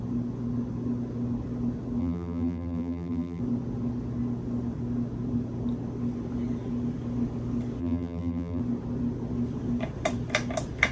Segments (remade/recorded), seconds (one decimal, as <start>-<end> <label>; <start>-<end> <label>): 0.0-2.0 recorded; 2.0-3.4 remade; 3.4-7.8 recorded; 7.8-8.6 remade; 8.6-10.9 recorded

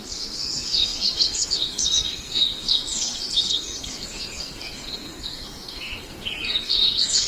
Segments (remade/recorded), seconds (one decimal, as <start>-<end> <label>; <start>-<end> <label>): 0.0-7.3 remade

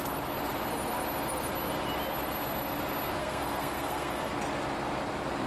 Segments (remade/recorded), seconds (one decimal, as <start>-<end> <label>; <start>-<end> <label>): 0.0-3.2 recorded; 3.2-4.3 remade; 4.3-5.5 recorded

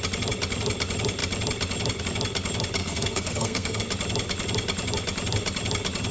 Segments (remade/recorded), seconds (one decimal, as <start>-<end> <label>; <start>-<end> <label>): 0.0-2.8 recorded; 2.8-3.8 remade; 3.8-6.1 recorded

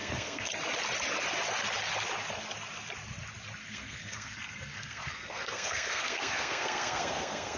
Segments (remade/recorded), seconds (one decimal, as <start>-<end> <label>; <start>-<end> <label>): 0.0-0.5 remade; 0.5-3.6 recorded; 3.6-7.6 remade

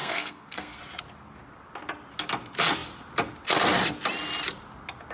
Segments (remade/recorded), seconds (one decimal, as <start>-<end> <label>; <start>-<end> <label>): 0.0-0.8 remade; 0.8-5.1 recorded

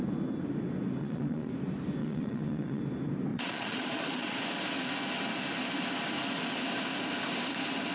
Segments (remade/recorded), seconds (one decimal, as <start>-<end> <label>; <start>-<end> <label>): 0.0-1.0 recorded; 1.0-1.5 remade; 1.5-2.0 recorded; 2.0-2.8 remade; 2.8-3.3 recorded; 3.3-4.4 remade; 4.4-7.9 recorded